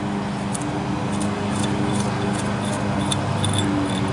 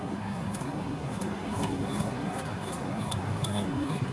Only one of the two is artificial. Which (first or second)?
second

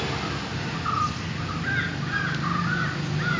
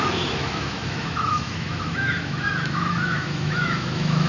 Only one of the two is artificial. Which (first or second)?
second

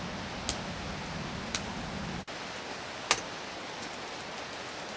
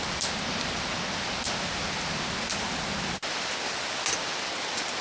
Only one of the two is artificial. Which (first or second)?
second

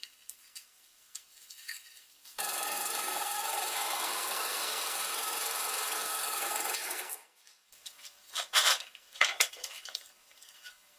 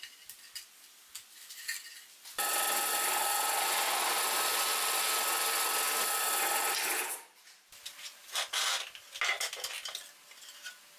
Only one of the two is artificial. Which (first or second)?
first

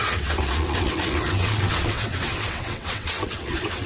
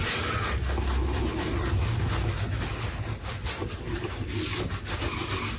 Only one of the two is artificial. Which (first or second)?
first